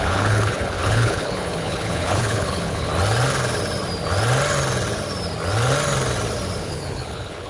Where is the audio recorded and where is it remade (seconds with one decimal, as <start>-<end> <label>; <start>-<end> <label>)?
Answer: 0.0-2.9 remade; 2.9-6.6 recorded; 6.6-7.5 remade